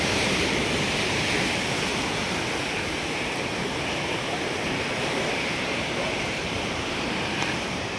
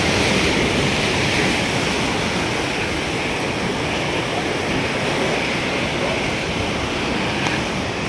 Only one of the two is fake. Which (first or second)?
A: first